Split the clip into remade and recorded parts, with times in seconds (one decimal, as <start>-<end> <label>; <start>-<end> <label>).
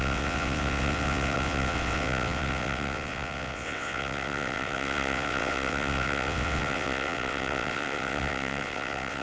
0.0-9.2 remade